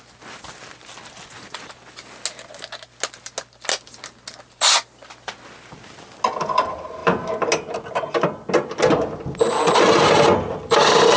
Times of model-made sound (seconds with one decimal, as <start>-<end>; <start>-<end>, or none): none